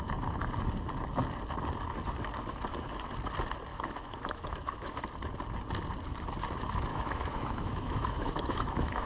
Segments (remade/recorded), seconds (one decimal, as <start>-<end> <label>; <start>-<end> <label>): 0.0-3.7 recorded; 3.7-5.0 remade; 5.0-6.9 recorded; 6.9-9.1 remade